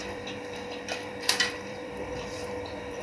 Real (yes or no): no